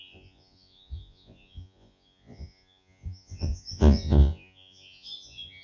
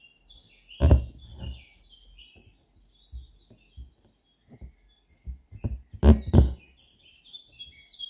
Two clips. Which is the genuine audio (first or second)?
second